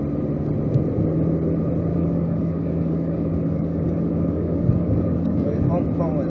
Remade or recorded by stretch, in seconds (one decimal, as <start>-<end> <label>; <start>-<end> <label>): 0.0-1.9 recorded; 1.9-5.7 remade; 5.7-6.3 recorded